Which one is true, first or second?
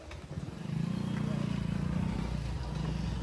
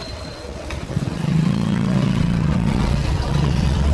first